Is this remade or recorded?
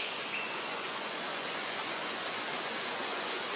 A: remade